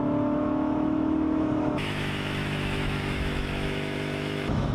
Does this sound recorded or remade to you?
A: remade